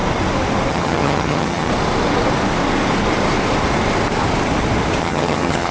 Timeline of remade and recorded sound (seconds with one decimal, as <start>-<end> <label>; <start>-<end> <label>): 0.0-0.7 recorded; 0.7-1.7 remade; 1.7-5.0 recorded; 5.0-5.7 remade